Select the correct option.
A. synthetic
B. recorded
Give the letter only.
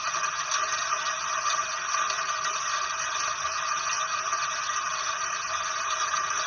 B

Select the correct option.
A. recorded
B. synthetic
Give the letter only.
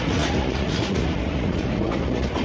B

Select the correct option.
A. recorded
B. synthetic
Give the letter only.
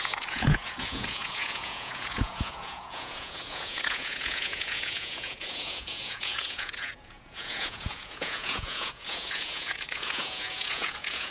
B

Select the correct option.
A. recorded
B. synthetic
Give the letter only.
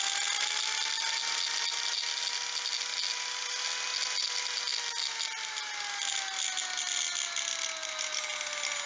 A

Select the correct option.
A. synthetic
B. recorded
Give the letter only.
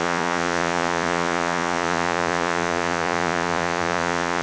A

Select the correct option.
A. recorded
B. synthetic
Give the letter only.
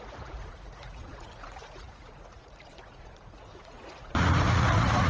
B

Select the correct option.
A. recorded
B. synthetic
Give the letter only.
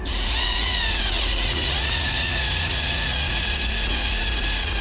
B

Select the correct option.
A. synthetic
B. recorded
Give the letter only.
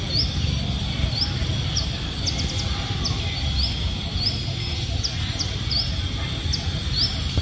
B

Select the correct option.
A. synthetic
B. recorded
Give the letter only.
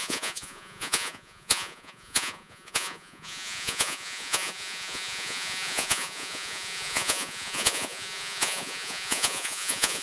A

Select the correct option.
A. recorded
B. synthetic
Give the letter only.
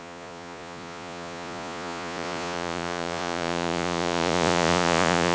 B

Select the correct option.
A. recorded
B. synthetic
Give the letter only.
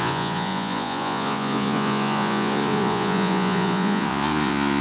B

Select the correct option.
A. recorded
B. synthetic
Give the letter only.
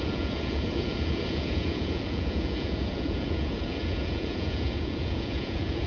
B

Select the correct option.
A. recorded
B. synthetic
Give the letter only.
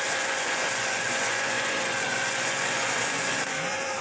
B